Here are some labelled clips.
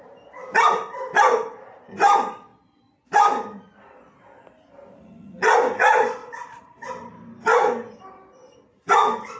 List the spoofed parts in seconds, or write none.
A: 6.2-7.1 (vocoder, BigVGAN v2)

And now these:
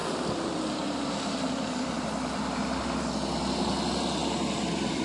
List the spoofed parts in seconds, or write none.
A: 0.0-3.0 (vocoder, BigVGAN v2); 4.2-5.0

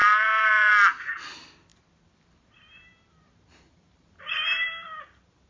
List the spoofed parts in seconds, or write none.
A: 0.0-0.7 (vocoder, BigVGAN v2); 1.7-5.0

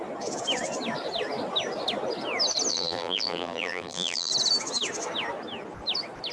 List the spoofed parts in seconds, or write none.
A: 2.7-4.3 (vocoder, BigVGAN v2)

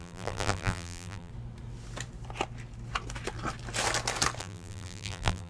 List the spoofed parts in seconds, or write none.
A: 0.0-1.3 (vocoder, BigVGAN v2); 4.4-5.5

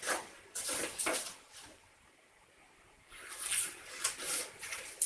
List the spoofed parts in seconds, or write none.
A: 1.2-2.5 (vocoder, BigVGAN v2)

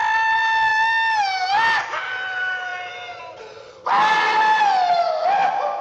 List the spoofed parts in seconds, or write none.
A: none